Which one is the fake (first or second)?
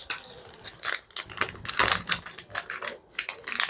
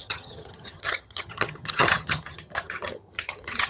second